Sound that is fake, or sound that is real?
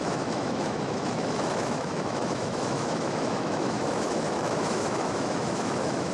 fake